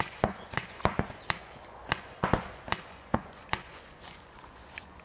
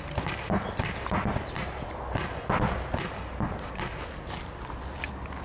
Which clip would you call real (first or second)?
second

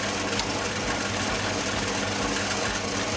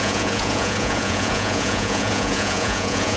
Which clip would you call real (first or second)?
first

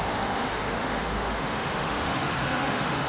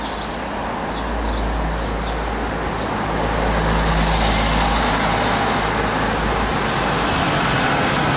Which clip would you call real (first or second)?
second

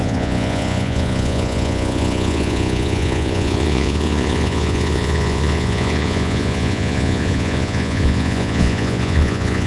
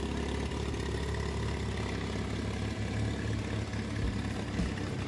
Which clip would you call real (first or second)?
second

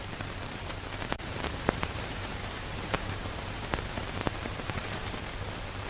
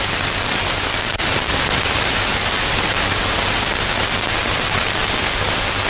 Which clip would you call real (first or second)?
second